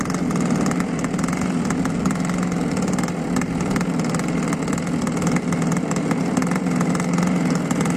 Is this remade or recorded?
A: recorded